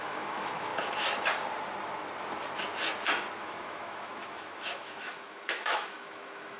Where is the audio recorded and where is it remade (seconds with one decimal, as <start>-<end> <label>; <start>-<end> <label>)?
0.0-0.7 remade; 0.7-3.4 recorded; 3.4-6.6 remade